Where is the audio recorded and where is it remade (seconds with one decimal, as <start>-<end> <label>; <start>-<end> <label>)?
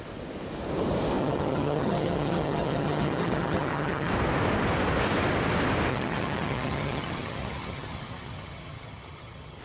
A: 0.0-1.2 recorded; 1.2-4.1 remade; 4.1-5.9 recorded; 5.9-9.6 remade